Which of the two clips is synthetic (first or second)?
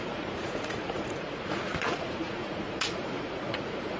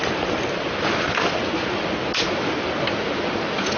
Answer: first